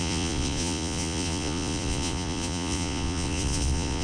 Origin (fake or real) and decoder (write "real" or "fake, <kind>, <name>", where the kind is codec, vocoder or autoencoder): fake, vocoder, Vocos